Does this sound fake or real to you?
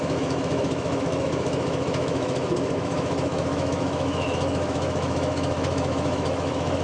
fake